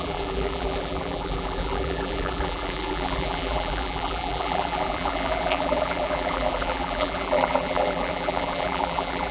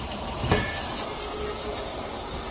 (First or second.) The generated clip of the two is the first